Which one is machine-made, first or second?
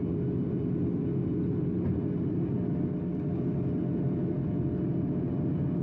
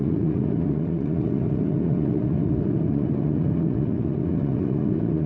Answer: second